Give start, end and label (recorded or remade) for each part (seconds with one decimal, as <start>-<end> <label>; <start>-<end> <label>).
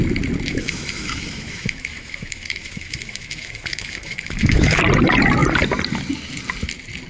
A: 0.0-0.5 recorded; 0.5-4.8 remade; 4.8-7.1 recorded